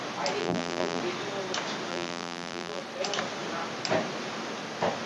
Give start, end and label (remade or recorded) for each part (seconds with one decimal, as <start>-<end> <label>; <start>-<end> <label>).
0.0-0.4 recorded; 0.4-1.0 remade; 1.0-1.9 recorded; 1.9-2.8 remade; 2.8-5.1 recorded